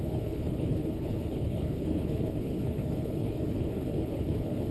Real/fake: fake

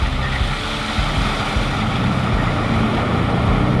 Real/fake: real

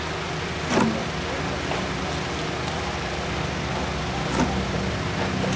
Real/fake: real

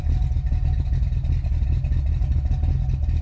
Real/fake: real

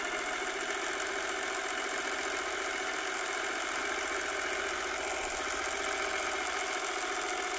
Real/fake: real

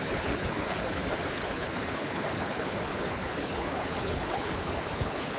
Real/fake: fake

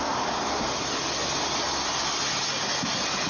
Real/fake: real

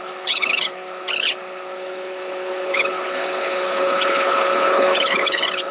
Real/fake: fake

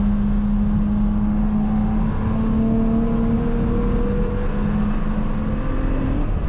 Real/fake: real